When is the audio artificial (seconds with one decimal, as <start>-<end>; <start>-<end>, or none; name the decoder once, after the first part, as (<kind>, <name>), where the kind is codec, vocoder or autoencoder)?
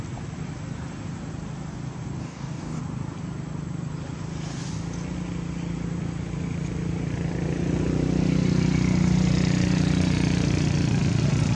2.2-2.8 (codec, DAC)